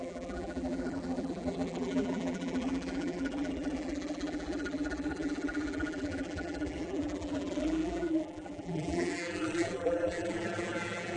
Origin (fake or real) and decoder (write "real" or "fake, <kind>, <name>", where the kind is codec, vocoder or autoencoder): fake, vocoder, BigVGAN v2